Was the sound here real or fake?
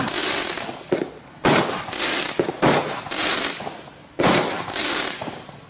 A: real